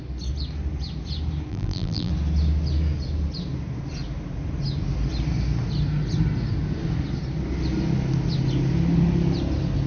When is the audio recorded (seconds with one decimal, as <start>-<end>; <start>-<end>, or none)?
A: 0.0-1.5; 2.1-9.9